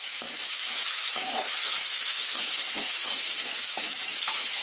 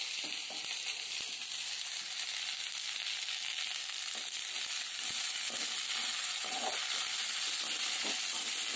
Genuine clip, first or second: second